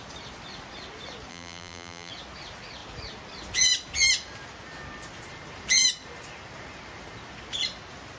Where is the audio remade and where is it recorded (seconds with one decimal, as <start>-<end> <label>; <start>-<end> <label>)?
0.0-1.3 recorded; 1.3-2.1 remade; 2.1-8.2 recorded